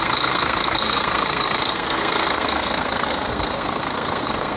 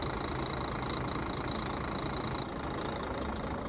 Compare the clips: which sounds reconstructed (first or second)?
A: first